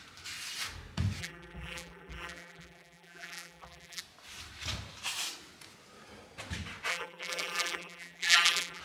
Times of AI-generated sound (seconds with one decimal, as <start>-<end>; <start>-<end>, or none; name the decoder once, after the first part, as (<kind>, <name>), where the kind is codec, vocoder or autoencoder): 1.2-4.0 (vocoder, BigVGAN v2); 6.9-8.8